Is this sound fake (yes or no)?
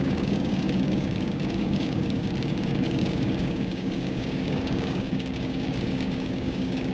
yes